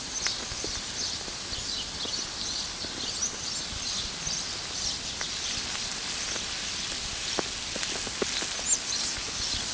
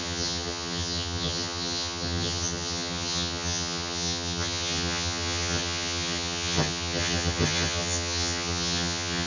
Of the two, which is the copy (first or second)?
second